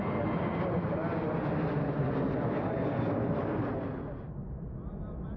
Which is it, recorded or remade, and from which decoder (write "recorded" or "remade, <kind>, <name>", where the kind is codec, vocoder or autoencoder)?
recorded